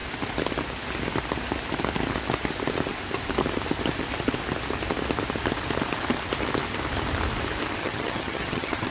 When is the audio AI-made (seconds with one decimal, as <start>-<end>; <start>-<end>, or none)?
7.8-8.9